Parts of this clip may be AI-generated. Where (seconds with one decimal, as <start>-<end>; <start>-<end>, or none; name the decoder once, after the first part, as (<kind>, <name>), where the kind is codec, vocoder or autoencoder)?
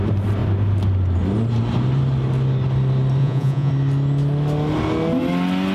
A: 3.2-3.7 (vocoder, Vocos)